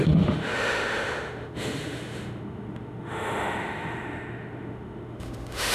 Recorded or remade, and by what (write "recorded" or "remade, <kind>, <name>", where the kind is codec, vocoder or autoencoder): remade, autoencoder, DAC-VAE